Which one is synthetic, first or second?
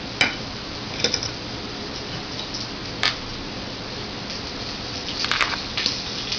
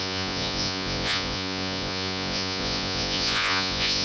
second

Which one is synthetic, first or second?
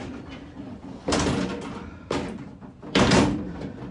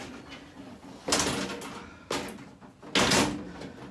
first